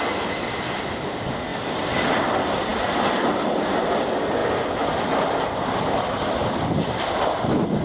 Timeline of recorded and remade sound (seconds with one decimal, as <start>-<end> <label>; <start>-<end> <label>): 0.0-7.8 recorded